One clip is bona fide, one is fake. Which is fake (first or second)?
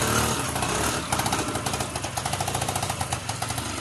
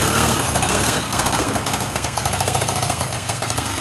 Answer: second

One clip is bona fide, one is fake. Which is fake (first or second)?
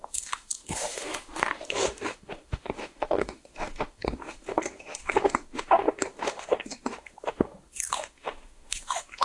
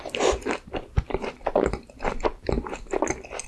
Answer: first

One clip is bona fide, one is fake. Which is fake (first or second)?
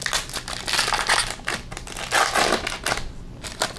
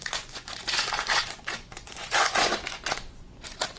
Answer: second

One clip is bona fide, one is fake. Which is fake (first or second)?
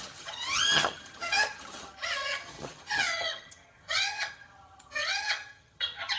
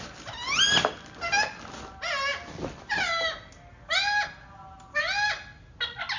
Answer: first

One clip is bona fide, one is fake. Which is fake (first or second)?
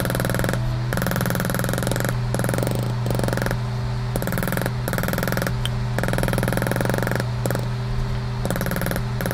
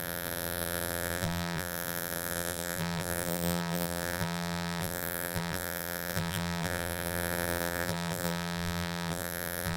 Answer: second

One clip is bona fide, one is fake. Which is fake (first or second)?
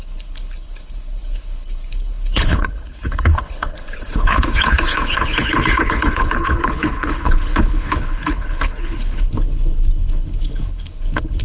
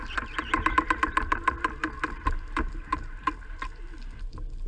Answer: first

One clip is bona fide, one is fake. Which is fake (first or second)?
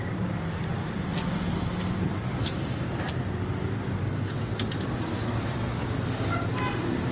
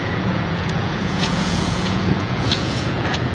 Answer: second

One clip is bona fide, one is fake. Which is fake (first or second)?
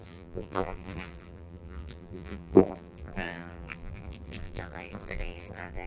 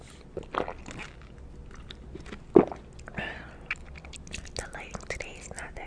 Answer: first